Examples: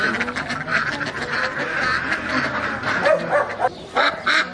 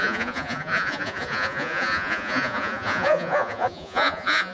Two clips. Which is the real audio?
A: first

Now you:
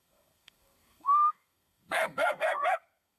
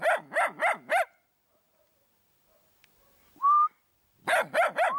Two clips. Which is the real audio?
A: second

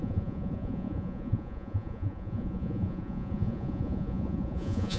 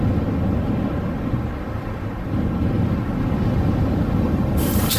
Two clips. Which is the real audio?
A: second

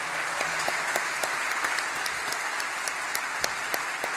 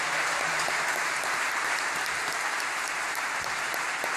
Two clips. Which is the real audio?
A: first